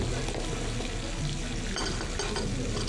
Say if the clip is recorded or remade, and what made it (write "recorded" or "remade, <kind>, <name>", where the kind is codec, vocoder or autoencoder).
recorded